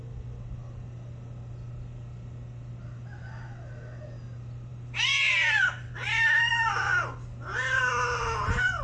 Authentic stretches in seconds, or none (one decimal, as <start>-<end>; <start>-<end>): 0.0-8.8